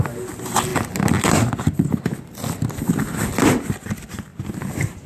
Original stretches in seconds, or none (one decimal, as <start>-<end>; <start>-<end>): 0.0-5.1

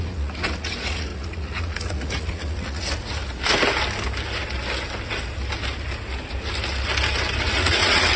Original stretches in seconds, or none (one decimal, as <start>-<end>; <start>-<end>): 3.2-7.4

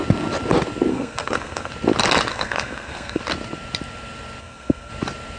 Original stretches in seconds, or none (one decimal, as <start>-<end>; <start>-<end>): 0.0-0.9; 1.7-2.3; 3.2-4.4; 4.9-5.4